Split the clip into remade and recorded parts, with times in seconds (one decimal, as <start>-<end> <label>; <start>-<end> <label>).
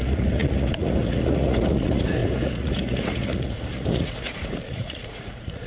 0.0-5.7 remade